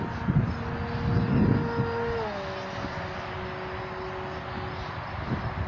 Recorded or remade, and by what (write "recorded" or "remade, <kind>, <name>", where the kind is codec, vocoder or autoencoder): recorded